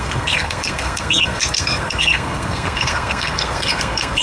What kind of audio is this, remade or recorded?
remade